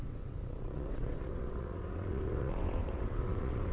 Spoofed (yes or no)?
yes